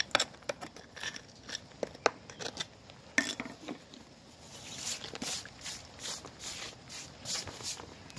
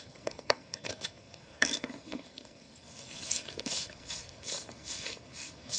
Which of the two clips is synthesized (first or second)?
second